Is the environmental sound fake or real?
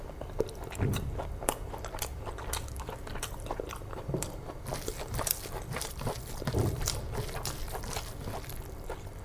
fake